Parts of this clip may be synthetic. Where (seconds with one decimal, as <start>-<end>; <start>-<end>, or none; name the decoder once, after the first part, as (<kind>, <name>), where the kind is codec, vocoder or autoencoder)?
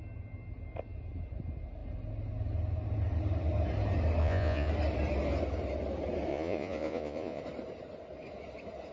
4.2-4.7 (vocoder, Vocos); 6.3-7.4